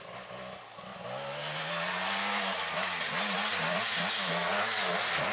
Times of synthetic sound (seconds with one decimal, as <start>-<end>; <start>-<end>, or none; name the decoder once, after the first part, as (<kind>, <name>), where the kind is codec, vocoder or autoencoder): none

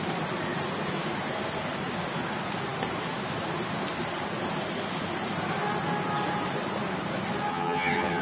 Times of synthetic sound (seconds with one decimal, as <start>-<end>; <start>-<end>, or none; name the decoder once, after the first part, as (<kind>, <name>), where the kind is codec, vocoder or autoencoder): 7.5-8.2 (vocoder, HiFi-GAN)

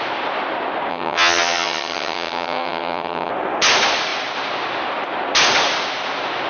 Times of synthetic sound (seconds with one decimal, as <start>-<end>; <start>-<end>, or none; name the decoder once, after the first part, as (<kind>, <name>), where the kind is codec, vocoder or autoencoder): 0.9-3.3 (vocoder, HiFi-GAN)

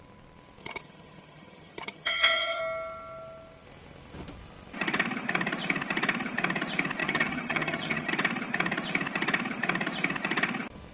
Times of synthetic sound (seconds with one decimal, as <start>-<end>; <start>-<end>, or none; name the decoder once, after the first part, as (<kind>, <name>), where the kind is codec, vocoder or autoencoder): 0.6-2.6 (vocoder, HiFi-GAN); 7.0-8.1

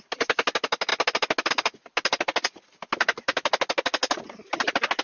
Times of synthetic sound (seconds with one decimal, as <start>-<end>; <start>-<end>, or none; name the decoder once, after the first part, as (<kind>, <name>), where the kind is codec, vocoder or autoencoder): none

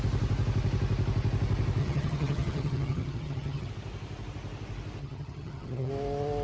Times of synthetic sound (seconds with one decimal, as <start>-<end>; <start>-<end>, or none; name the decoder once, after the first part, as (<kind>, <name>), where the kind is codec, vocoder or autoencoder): 1.8-3.7 (vocoder, HiFi-GAN); 5.0-5.9

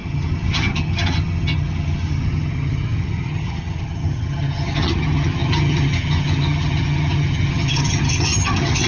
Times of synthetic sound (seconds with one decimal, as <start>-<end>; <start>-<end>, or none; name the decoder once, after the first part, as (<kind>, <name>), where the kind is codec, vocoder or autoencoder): 0.0-8.9 (vocoder, HiFi-GAN)

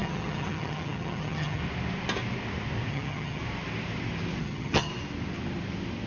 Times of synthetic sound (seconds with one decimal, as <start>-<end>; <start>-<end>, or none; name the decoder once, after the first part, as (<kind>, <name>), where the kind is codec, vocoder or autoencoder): 0.0-1.6 (vocoder, HiFi-GAN); 2.9-3.4; 4.4-4.9